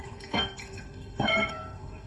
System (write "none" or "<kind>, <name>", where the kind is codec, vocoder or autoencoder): codec, SNAC